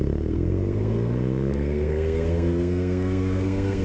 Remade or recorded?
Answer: remade